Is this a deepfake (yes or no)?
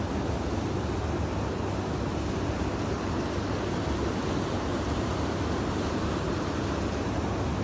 no